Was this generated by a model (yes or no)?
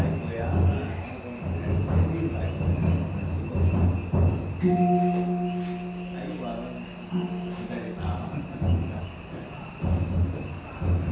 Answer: no